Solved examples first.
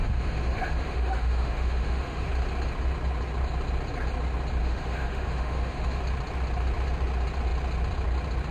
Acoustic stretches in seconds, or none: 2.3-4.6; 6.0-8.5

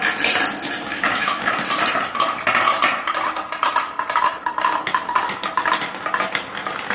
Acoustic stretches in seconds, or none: 0.0-0.9; 1.5-6.9

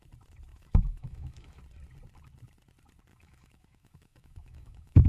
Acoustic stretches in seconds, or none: 0.0-0.5; 1.6-3.1

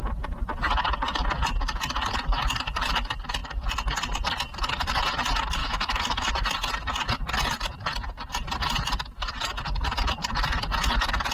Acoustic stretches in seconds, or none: 0.0-5.6; 6.3-11.3

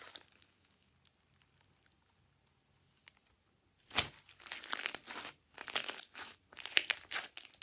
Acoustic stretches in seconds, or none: 0.0-0.4; 0.9-5.8; 6.4-7.6

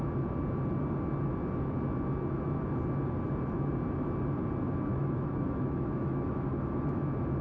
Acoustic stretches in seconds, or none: 0.0-4.9; 7.0-7.4